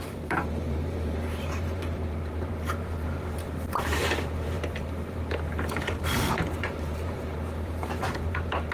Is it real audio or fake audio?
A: fake